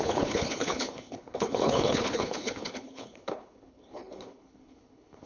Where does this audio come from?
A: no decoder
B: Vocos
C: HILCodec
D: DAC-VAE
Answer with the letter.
C